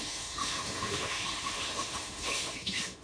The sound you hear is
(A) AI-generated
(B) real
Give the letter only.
A